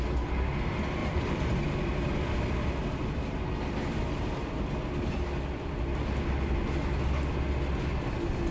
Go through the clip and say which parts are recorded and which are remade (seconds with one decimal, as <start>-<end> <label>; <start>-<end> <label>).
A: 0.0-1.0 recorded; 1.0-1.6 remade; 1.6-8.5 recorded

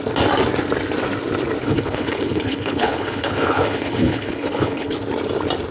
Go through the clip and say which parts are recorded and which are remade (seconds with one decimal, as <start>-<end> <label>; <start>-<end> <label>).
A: 0.0-1.6 recorded; 1.6-5.0 remade; 5.0-5.7 recorded

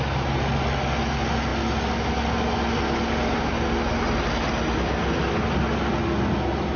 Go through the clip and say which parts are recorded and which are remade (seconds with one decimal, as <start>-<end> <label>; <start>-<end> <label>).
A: 0.0-6.8 recorded